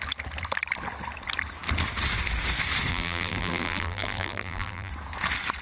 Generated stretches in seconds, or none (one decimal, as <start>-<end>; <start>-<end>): 2.9-4.9